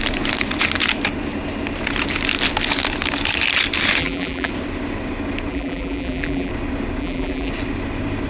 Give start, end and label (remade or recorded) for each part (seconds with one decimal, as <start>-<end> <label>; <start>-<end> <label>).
0.0-4.0 recorded; 4.0-4.5 remade; 4.5-5.5 recorded; 5.5-6.5 remade; 6.5-7.0 recorded; 7.0-7.5 remade; 7.5-8.3 recorded

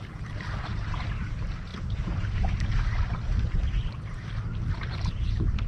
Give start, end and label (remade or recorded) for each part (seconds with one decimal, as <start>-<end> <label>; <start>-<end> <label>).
0.0-5.7 remade

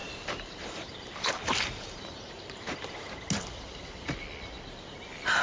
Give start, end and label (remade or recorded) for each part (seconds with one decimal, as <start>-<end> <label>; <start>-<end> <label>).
0.0-3.2 remade; 3.2-5.4 recorded

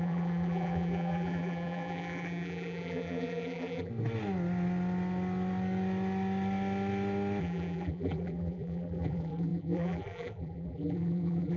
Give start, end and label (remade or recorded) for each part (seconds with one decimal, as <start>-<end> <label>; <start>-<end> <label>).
0.0-3.9 remade; 3.9-7.4 recorded; 7.4-11.6 remade

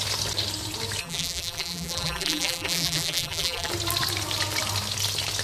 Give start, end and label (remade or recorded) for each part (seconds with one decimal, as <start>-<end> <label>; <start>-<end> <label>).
0.0-1.0 recorded; 1.0-3.7 remade; 3.7-5.4 recorded

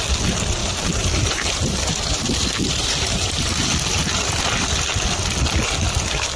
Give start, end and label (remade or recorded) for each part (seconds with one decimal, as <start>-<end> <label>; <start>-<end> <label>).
0.0-0.6 recorded; 0.6-4.4 remade; 4.4-6.4 recorded